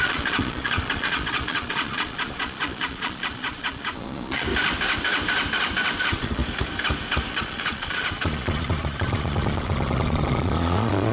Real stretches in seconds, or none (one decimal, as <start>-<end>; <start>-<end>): 4.5-6.0; 6.4-7.3